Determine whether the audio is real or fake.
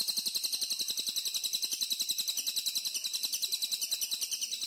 real